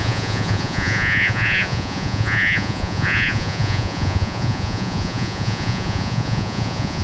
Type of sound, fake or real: fake